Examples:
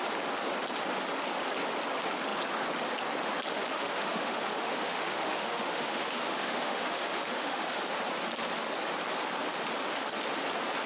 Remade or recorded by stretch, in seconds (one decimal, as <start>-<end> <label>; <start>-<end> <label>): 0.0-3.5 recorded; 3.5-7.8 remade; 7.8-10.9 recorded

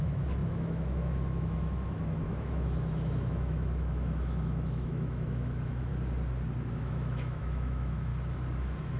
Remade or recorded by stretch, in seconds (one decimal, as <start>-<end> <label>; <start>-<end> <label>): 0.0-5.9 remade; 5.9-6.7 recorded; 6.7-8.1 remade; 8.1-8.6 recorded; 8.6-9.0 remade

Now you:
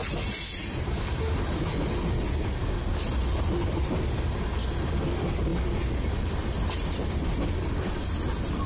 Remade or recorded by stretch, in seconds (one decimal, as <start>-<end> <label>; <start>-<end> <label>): 0.0-8.7 recorded

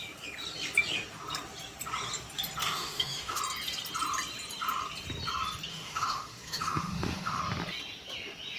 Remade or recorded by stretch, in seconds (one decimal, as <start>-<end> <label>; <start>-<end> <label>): 0.0-2.6 recorded; 2.6-3.4 remade; 3.4-5.7 recorded; 5.7-7.4 remade; 7.4-8.6 recorded